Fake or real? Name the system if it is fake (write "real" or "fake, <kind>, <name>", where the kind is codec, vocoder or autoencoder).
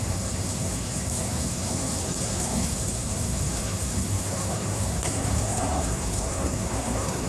fake, codec, SNAC